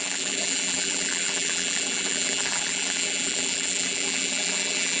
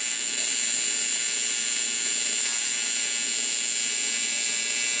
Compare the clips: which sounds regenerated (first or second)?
first